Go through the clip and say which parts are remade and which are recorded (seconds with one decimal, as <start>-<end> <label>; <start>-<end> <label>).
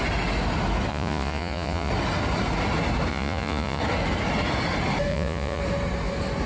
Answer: 0.0-0.9 recorded; 0.9-1.9 remade; 1.9-3.1 recorded; 3.1-3.8 remade; 3.8-5.1 recorded; 5.1-5.6 remade; 5.6-6.5 recorded